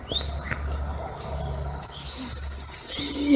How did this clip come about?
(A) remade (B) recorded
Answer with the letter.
B